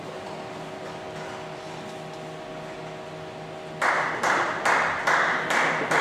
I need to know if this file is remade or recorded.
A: recorded